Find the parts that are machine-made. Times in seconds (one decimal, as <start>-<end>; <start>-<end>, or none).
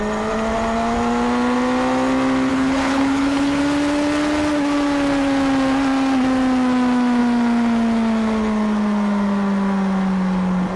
2.5-3.6